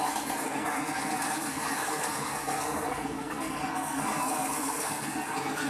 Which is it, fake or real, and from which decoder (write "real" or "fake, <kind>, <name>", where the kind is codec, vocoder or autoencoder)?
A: fake, codec, SNAC